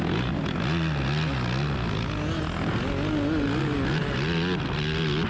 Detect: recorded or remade recorded